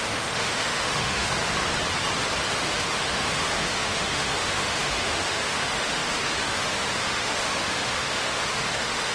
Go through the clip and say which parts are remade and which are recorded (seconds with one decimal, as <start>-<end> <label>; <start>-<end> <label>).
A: 0.0-1.4 remade; 1.4-2.5 recorded; 2.5-9.1 remade